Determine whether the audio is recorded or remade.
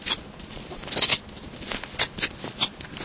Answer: recorded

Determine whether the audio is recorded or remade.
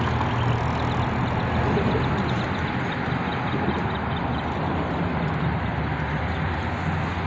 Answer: recorded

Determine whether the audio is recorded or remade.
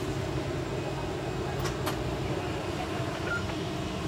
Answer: recorded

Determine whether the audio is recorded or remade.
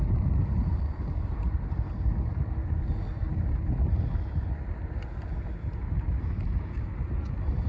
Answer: recorded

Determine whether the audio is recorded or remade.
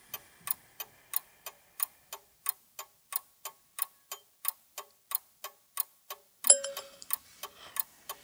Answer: recorded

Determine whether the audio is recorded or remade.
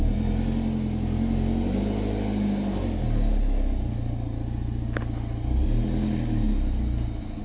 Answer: recorded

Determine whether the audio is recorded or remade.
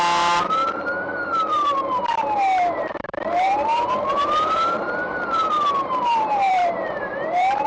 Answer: remade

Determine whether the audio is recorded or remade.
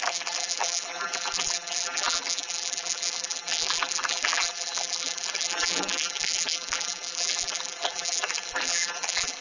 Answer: remade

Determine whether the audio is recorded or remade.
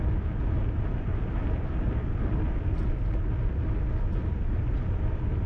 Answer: recorded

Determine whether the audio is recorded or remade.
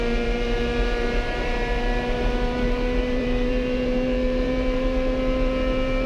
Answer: remade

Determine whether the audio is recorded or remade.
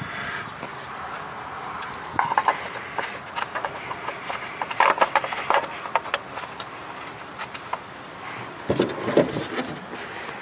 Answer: recorded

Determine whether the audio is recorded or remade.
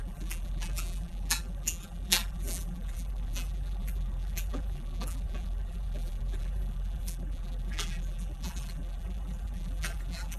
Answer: remade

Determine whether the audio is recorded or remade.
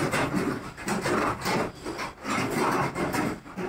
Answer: recorded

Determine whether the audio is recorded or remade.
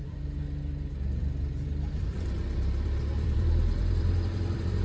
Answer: remade